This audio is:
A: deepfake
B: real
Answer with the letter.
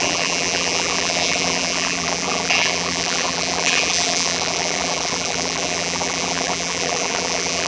A